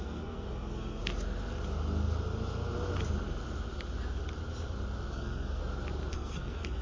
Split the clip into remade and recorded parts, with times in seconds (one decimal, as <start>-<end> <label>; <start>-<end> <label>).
0.0-1.0 remade; 1.0-5.1 recorded; 5.1-5.6 remade; 5.6-6.1 recorded; 6.1-6.8 remade